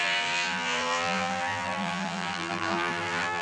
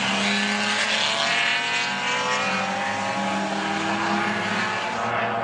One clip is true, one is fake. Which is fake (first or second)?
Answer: first